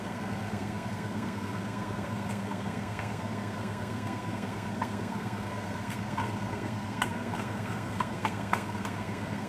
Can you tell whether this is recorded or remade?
remade